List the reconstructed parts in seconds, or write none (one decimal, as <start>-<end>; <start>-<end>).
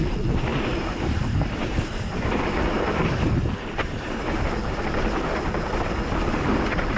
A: 0.5-4.5